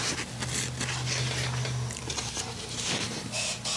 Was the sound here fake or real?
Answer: fake